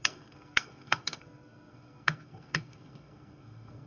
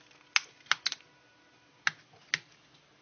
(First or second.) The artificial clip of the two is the first